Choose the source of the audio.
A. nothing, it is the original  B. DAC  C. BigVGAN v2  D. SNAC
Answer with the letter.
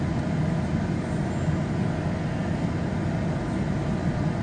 A